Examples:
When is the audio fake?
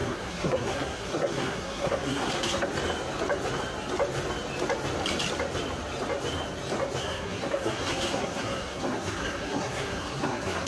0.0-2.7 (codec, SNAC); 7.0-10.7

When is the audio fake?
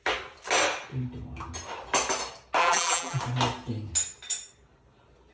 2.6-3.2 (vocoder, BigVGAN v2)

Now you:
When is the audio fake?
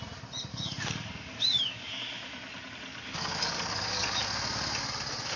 0.5-2.0 (codec, DAC); 2.9-4.2